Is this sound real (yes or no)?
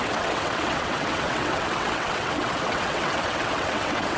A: no